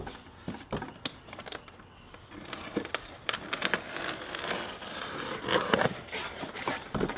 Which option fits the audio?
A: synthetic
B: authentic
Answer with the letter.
B